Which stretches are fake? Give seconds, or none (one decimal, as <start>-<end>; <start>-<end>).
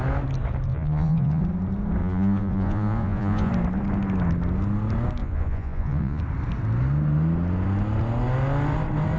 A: 0.7-1.4; 2.0-3.5; 5.2-6.2